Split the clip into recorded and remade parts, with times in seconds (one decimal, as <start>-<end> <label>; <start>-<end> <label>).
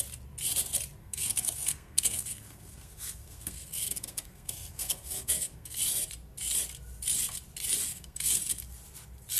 0.0-1.0 recorded; 1.0-5.8 remade; 5.8-7.9 recorded; 7.9-8.4 remade; 8.4-9.4 recorded